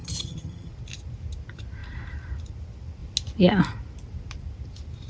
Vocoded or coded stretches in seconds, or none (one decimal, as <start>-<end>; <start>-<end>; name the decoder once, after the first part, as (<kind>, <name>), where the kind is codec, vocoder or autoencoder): 0.0-0.7 (vocoder, HiFi-GAN)